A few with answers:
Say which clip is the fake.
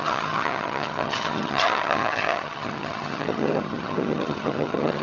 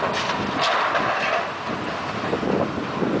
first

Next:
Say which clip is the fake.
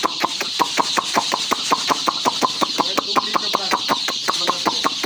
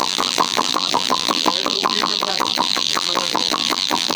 second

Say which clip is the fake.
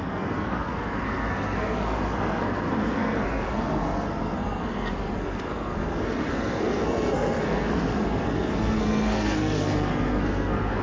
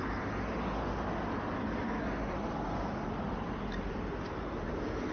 first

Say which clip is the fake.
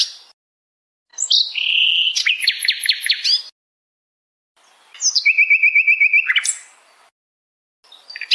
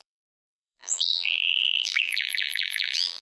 second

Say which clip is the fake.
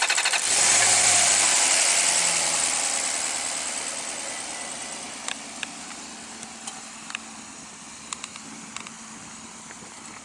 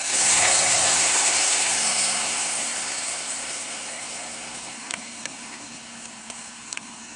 second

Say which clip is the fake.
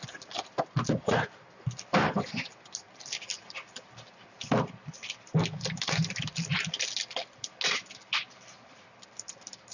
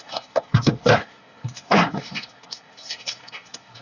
second